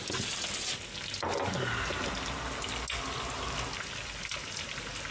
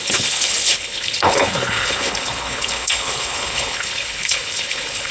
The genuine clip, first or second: first